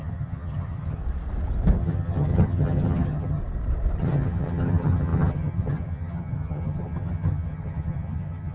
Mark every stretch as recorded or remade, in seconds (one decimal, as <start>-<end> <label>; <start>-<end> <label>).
0.0-1.0 remade; 1.0-1.8 recorded; 1.8-3.4 remade; 3.4-4.0 recorded; 4.0-8.5 remade